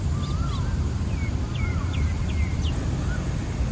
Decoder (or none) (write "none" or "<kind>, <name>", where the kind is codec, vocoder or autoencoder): none